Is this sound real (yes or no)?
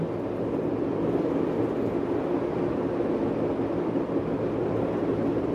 yes